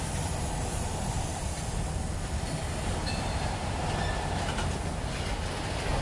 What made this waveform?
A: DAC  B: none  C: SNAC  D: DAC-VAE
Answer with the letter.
B